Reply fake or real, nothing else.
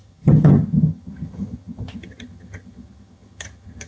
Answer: fake